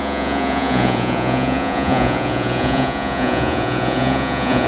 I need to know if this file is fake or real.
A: fake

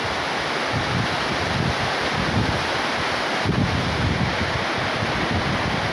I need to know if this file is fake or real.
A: real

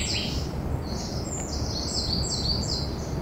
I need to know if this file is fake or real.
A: real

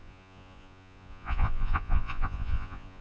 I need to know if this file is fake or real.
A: fake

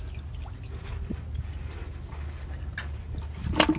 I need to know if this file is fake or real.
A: real